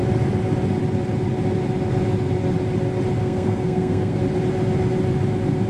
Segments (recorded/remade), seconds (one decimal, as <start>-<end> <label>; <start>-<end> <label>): 0.0-3.2 recorded; 3.2-4.2 remade; 4.2-5.7 recorded